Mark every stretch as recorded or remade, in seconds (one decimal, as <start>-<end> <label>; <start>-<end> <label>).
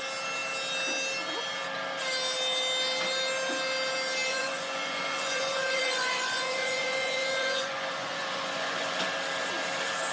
0.0-4.3 recorded; 4.3-9.0 remade; 9.0-10.1 recorded